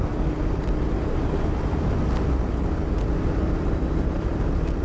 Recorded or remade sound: recorded